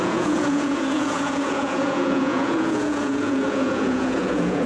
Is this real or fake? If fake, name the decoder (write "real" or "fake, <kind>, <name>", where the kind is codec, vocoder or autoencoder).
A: fake, vocoder, Vocos